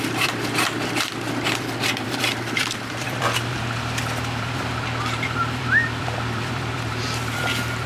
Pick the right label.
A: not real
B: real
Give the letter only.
A